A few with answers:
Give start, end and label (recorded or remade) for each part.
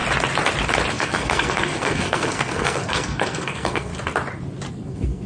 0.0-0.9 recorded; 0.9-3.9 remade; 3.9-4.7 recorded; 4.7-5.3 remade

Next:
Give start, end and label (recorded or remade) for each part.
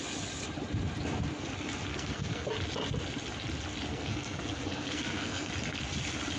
0.0-1.9 recorded; 1.9-2.5 remade; 2.5-3.9 recorded; 3.9-5.5 remade; 5.5-6.4 recorded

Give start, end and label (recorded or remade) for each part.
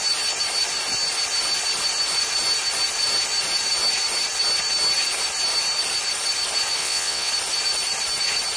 0.0-6.8 recorded; 6.8-7.3 remade; 7.3-8.6 recorded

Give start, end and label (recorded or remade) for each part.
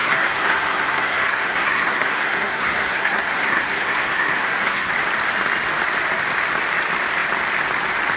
0.0-4.9 remade; 4.9-8.2 recorded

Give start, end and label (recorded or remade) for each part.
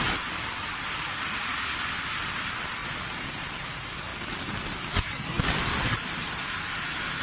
0.0-7.2 recorded